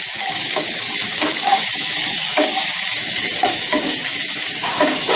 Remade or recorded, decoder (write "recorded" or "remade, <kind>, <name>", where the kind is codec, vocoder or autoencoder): remade, codec, DAC